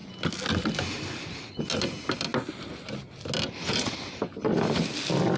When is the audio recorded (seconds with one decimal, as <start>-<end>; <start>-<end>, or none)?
0.0-5.4